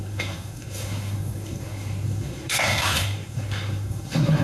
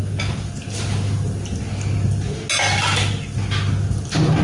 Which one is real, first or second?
second